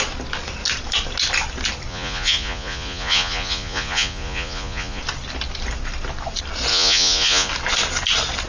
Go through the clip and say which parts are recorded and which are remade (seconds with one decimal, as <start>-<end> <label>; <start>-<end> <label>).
0.0-1.9 recorded; 1.9-5.0 remade; 5.0-6.7 recorded; 6.7-7.5 remade; 7.5-8.5 recorded